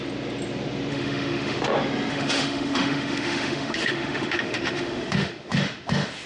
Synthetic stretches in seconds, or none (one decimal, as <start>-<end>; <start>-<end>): 0.9-1.6; 2.1-6.3